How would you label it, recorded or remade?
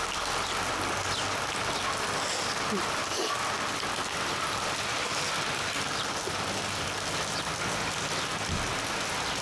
recorded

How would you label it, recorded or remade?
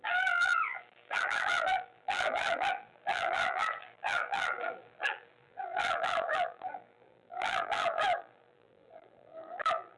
remade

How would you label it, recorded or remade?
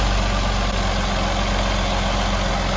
recorded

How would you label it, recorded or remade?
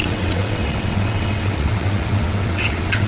remade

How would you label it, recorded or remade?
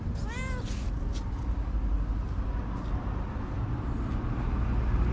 recorded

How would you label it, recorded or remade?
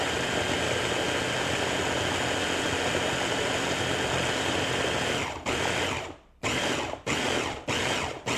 recorded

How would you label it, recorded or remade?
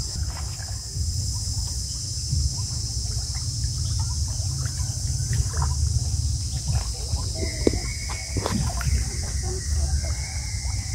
recorded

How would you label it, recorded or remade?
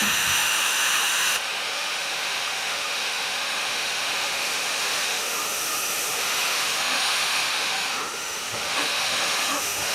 remade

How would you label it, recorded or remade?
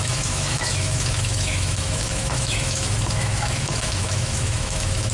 remade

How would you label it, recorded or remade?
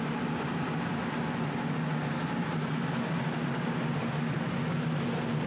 recorded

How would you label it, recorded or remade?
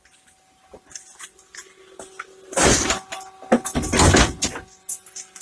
recorded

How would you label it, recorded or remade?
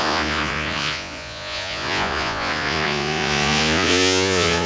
remade